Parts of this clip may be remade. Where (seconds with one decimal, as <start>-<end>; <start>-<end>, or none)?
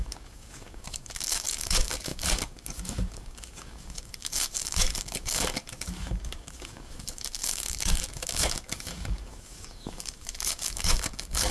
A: 0.0-11.5